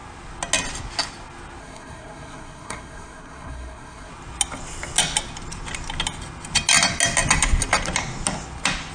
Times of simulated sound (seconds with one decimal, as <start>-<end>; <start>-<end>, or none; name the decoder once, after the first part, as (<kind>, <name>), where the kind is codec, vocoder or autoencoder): 1.6-4.1 (codec, SNAC)